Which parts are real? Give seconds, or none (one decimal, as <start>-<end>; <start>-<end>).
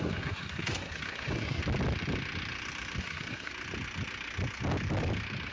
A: 1.6-3.0; 3.5-5.5